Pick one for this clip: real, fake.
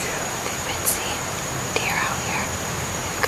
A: fake